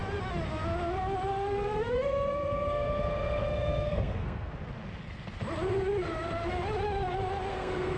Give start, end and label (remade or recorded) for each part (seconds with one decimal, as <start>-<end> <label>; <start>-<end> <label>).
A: 0.0-1.3 recorded; 1.3-4.5 remade; 4.5-7.5 recorded; 7.5-8.0 remade